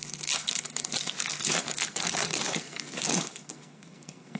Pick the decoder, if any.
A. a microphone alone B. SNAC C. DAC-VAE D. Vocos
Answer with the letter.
B